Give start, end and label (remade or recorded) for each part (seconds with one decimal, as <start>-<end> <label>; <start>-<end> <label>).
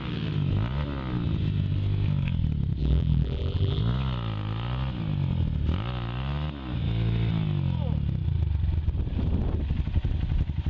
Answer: 0.0-2.8 recorded; 2.8-3.8 remade; 3.8-10.7 recorded